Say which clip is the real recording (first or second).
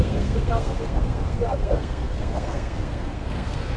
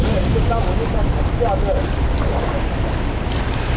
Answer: second